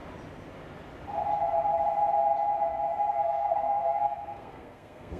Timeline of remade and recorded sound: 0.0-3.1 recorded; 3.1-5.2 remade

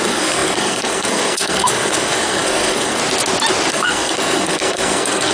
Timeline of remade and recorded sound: 0.0-3.0 remade; 3.0-3.7 recorded; 3.7-5.3 remade

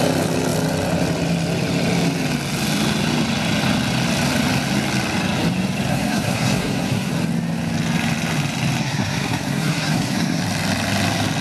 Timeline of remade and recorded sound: 0.0-5.9 recorded; 5.9-7.1 remade; 7.1-8.8 recorded; 8.8-10.4 remade; 10.4-11.4 recorded

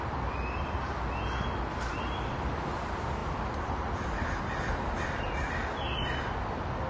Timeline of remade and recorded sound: 0.0-6.9 recorded